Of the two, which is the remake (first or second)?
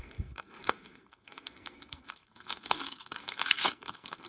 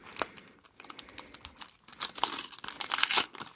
first